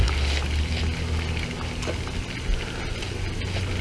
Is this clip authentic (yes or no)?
yes